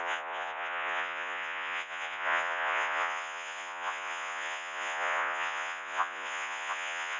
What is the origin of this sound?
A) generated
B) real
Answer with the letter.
A